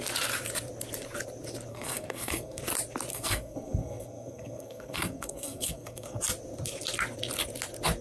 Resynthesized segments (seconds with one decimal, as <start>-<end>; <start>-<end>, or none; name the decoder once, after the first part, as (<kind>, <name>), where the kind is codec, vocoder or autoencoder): 1.7-2.6 (codec, SNAC); 3.1-6.2